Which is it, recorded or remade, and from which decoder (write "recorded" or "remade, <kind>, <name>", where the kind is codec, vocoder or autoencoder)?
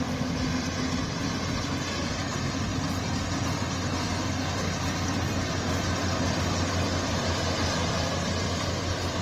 recorded